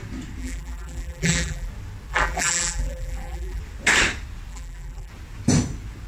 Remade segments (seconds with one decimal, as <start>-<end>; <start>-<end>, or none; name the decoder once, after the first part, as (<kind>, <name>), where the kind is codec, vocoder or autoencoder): 0.4-1.7 (vocoder, BigVGAN v2); 2.1-3.6; 4.5-5.1